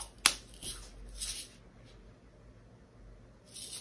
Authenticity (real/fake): real